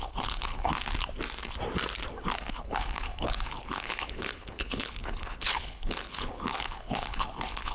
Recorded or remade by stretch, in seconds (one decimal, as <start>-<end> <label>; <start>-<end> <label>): 0.0-0.7 remade; 0.7-2.5 recorded; 2.5-7.7 remade